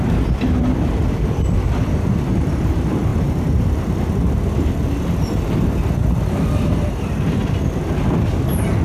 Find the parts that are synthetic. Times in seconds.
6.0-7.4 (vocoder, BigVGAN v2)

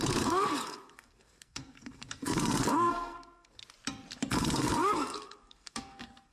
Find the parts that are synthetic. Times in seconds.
0.0-3.6 (codec, SNAC); 4.3-6.3

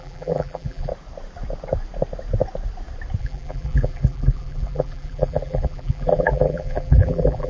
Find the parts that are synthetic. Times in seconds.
0.0-0.9 (vocoder, BigVGAN v2); 3.2-7.5

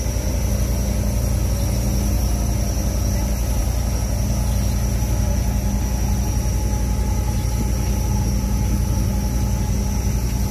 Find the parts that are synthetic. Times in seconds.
none

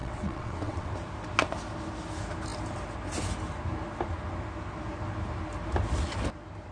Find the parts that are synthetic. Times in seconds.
0.0-0.9 (vocoder, WaveNeXt)

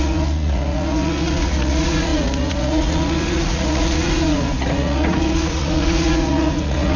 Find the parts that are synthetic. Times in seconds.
0.0-7.0 (vocoder, Vocos)

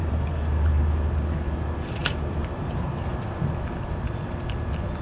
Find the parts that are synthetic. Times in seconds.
0.0-0.8 (vocoder, BigVGAN v2); 2.0-3.7

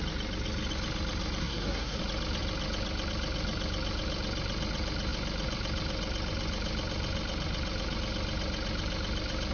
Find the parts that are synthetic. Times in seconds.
1.4-2.0 (codec, SNAC)